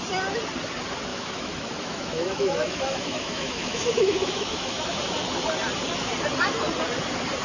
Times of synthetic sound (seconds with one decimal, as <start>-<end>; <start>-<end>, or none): 1.1-5.0